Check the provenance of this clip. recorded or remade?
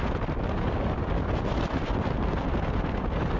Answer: recorded